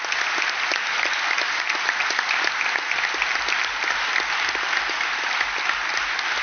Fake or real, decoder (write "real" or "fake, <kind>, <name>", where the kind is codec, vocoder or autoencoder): real